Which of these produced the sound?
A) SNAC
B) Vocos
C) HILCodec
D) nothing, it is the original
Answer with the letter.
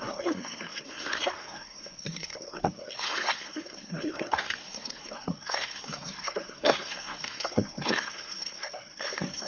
A